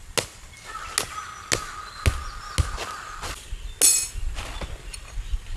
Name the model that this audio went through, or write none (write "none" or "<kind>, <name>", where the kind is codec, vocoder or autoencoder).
none